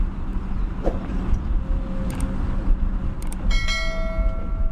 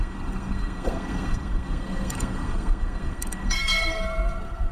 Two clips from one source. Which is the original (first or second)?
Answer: first